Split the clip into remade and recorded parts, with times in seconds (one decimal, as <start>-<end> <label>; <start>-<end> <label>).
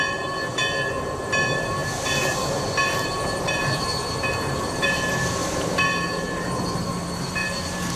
0.0-8.0 remade